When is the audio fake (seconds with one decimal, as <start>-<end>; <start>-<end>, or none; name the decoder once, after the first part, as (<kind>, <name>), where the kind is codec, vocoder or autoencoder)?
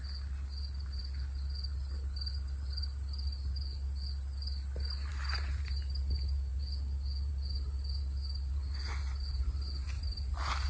none